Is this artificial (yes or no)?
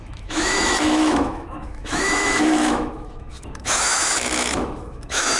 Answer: yes